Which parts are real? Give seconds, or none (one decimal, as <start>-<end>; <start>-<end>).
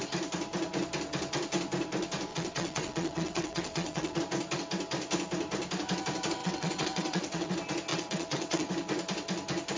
0.0-2.3; 4.2-6.4; 7.5-7.9; 8.7-9.8